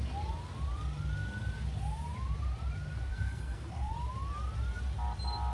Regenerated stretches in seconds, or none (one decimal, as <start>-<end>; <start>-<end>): 3.1-3.9